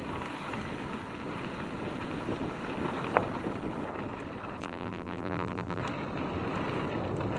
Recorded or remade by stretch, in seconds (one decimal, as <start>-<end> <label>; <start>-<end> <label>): 0.0-4.6 recorded; 4.6-5.8 remade; 5.8-7.4 recorded